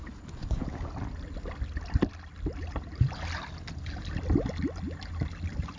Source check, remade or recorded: recorded